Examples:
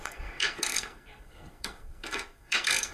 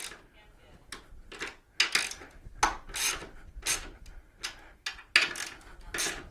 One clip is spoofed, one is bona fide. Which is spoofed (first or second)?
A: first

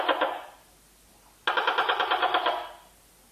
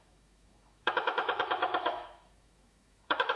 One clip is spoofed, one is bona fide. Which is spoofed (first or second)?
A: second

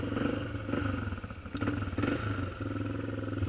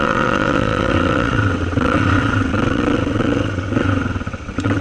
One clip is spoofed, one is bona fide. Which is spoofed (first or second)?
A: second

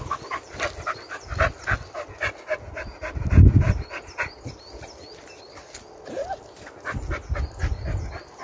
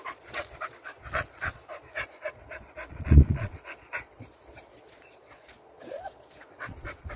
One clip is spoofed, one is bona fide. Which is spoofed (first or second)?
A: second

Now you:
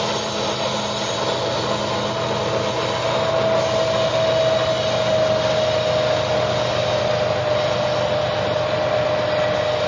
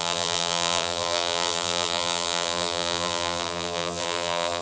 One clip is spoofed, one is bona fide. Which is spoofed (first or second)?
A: second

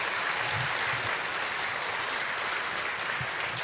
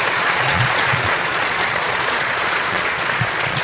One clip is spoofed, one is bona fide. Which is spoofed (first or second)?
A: second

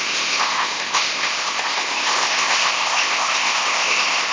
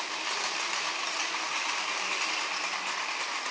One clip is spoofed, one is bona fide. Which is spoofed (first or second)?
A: first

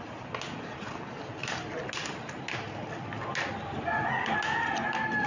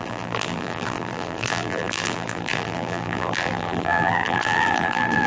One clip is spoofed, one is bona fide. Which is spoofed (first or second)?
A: second